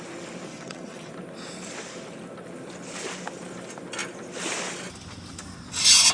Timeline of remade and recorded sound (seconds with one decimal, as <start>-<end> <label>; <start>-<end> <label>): 0.0-0.5 recorded; 0.5-1.1 remade; 1.1-6.1 recorded